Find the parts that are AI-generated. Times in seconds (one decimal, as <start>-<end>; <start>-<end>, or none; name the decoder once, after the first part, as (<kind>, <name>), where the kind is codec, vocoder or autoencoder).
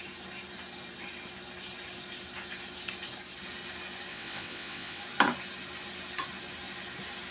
4.1-5.0 (vocoder, WaveNeXt)